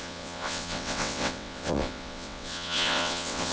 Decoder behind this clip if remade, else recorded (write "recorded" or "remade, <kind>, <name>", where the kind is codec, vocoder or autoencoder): remade, vocoder, WaveNeXt